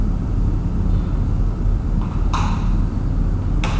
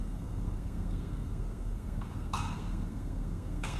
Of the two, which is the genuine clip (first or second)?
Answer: first